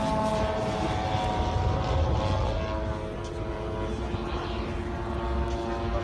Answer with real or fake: real